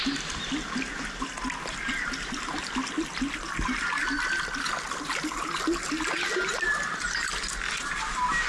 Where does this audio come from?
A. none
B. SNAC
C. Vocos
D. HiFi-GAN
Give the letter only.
A